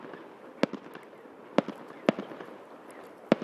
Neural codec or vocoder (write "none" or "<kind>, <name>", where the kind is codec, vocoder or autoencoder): none